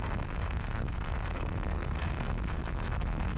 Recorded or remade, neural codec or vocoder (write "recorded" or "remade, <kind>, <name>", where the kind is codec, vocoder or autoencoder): remade, codec, SNAC